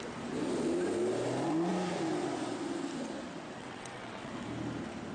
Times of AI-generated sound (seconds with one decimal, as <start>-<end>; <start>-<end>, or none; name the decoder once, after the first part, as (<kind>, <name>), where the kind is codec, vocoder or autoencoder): 3.6-4.3 (vocoder, WaveNeXt)